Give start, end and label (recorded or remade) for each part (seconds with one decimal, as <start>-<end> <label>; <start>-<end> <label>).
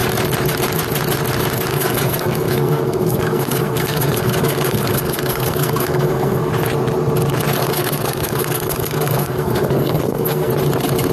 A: 0.0-1.7 recorded; 1.7-6.5 remade; 6.5-7.6 recorded; 7.6-10.5 remade; 10.5-11.1 recorded